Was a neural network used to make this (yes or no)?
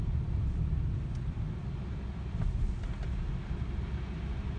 no